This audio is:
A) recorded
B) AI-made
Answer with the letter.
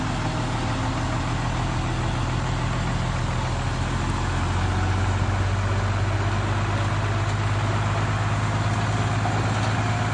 A